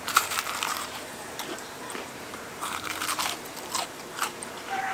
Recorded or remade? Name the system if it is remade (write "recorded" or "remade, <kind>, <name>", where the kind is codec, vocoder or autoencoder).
remade, vocoder, BigVGAN v2